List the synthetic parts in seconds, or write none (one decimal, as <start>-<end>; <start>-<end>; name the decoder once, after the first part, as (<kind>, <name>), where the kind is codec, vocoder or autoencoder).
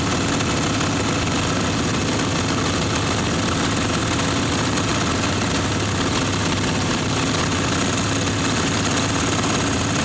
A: 6.4-7.1 (vocoder, BigVGAN v2)